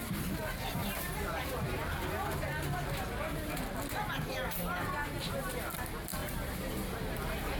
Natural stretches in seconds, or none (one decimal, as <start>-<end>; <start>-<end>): 0.0-7.6